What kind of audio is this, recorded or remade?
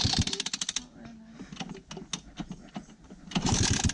recorded